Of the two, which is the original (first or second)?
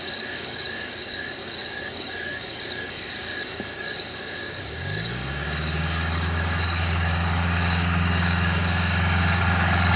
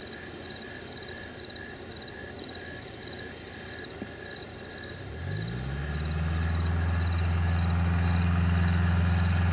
second